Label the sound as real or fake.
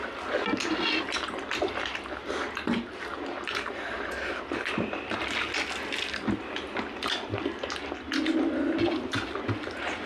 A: real